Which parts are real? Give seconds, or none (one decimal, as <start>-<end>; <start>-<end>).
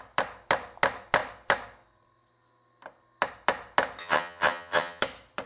0.0-4.0; 5.0-5.5